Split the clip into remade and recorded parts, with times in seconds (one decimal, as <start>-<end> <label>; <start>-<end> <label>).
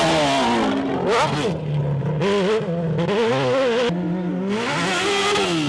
0.0-5.7 recorded